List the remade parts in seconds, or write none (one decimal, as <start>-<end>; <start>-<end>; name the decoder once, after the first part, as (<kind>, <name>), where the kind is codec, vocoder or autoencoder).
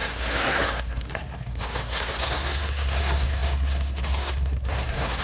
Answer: 0.0-5.2 (codec, SNAC)